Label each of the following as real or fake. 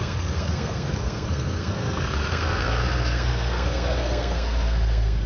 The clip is fake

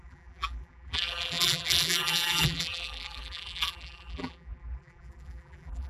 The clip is fake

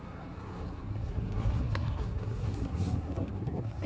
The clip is fake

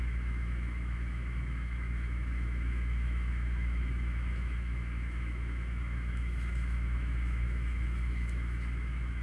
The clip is fake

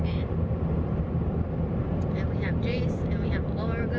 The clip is fake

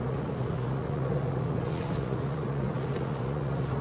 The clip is fake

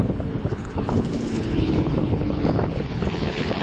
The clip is fake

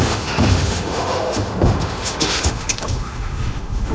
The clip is fake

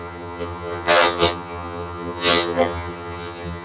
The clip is fake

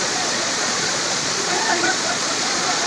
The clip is fake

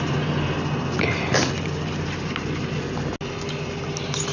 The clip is real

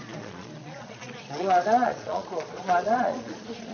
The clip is fake